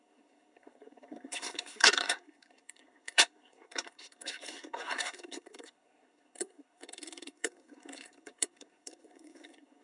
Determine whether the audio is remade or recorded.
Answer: remade